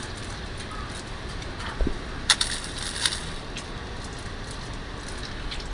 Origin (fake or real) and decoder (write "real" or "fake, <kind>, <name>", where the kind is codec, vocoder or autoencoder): fake, vocoder, BigVGAN v2